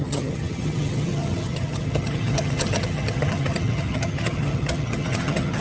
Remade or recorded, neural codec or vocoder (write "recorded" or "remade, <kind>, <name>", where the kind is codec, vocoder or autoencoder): remade, vocoder, HiFi-GAN